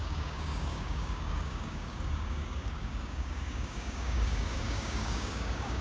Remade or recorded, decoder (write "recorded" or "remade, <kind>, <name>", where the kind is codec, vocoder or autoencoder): remade, codec, DAC